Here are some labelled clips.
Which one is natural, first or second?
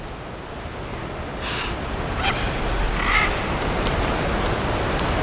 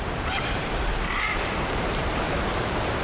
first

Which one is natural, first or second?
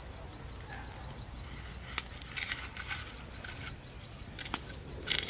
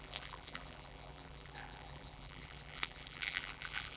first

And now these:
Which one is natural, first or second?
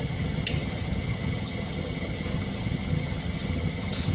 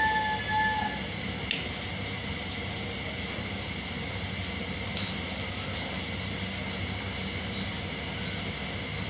second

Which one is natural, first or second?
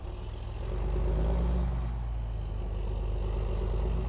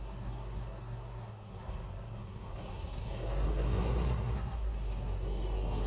first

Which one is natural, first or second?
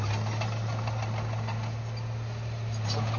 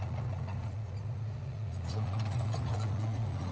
first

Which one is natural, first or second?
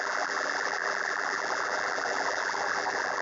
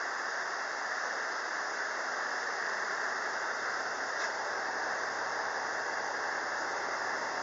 second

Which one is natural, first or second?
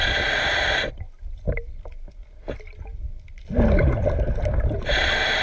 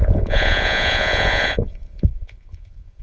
first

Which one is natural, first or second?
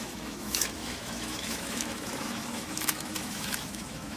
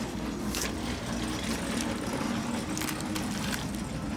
second